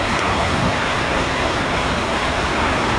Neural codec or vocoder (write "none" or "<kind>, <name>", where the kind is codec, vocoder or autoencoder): codec, SNAC